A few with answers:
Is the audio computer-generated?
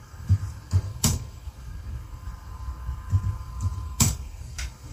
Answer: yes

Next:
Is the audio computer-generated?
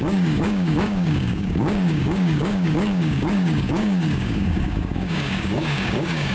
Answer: yes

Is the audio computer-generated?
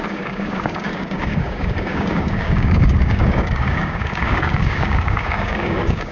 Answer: yes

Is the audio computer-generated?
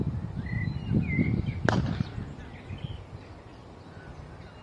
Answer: no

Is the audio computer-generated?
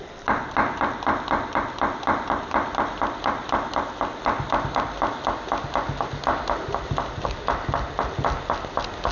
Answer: no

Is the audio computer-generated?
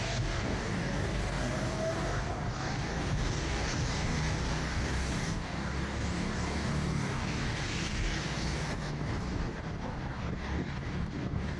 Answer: yes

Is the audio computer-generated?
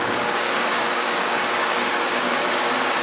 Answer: yes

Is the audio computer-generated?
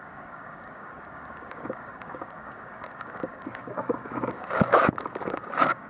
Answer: yes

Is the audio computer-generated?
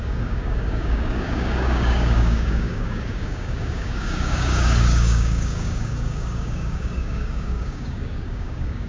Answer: yes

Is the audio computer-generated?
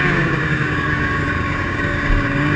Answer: yes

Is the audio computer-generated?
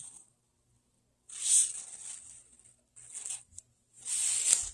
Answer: no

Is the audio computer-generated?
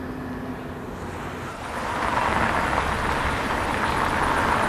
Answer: no